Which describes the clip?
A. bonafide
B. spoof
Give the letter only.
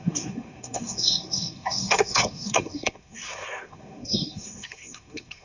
B